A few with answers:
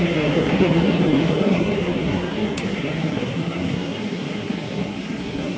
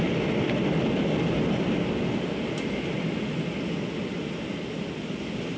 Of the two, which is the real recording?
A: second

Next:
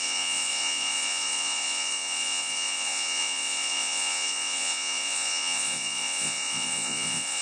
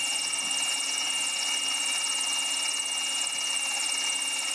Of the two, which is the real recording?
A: second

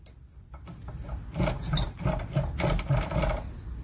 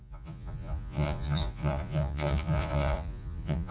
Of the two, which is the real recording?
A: first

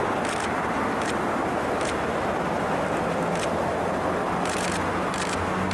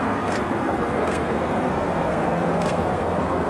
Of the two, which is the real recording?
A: first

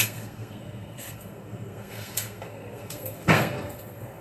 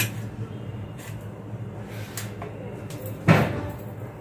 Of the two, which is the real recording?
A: second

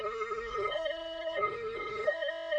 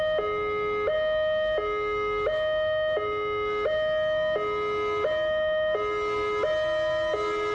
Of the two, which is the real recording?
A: second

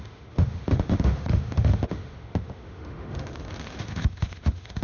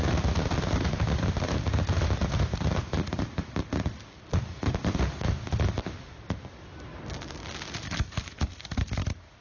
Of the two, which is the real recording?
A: second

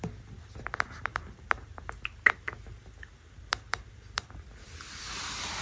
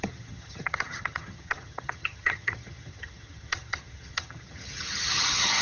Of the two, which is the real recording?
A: first